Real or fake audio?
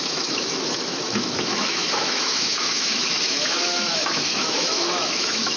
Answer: fake